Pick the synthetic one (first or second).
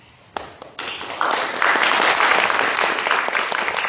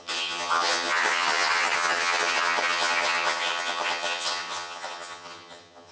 second